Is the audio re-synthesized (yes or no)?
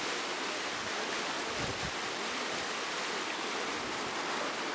no